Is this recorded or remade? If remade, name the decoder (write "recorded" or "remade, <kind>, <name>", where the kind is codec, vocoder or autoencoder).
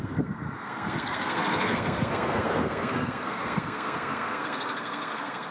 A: remade, codec, SNAC